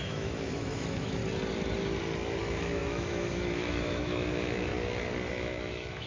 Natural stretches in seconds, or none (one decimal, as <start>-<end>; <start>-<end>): 1.2-2.4; 4.7-5.3